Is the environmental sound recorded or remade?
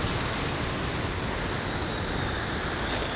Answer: recorded